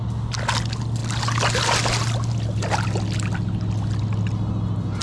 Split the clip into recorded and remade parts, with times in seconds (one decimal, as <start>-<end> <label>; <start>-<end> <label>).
0.0-5.0 recorded